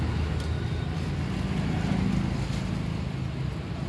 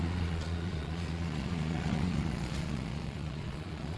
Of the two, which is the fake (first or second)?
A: second